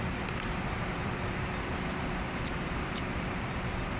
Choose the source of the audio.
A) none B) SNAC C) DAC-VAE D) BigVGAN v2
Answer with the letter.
D